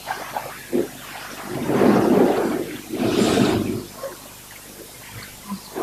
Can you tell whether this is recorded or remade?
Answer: recorded